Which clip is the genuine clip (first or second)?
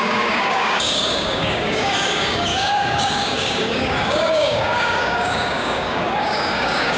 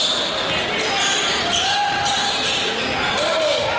second